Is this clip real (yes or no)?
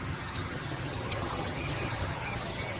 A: no